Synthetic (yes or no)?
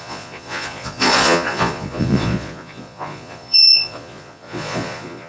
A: yes